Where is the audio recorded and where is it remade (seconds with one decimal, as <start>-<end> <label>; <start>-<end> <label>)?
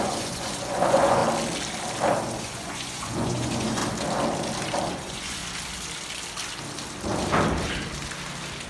0.0-1.2 remade; 1.2-2.4 recorded; 2.4-3.8 remade; 3.8-4.9 recorded; 4.9-5.4 remade; 5.4-8.7 recorded